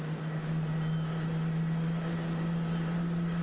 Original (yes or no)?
yes